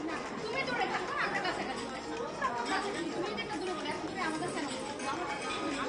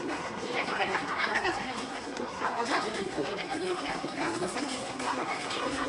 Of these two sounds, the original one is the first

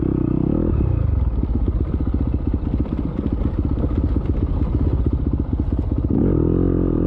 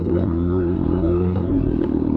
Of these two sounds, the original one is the first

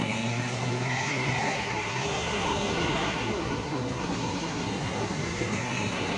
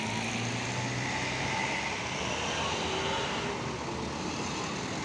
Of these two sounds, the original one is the second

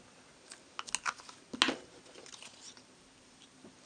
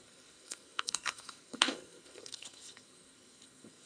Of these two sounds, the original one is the first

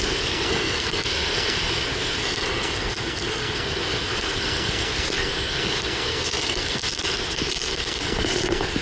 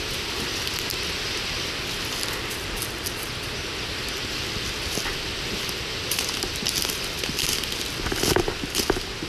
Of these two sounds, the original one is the second